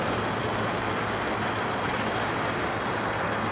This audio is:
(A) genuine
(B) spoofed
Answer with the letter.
A